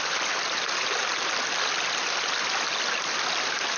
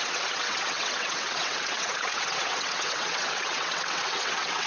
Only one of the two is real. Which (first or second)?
first